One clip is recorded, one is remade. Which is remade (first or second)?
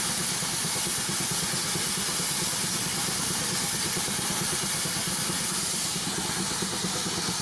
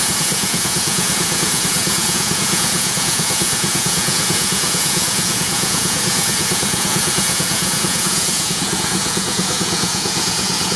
second